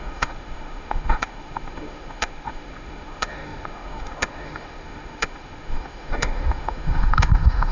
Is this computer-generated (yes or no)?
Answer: yes